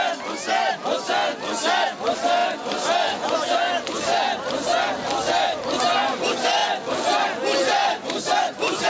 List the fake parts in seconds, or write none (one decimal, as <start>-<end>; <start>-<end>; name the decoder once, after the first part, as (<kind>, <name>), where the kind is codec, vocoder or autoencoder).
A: none